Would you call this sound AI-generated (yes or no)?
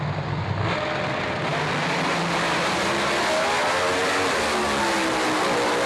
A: no